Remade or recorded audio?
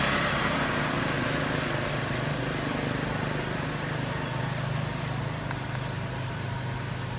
recorded